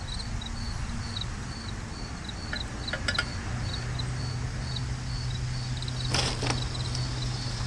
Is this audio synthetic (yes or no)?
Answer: no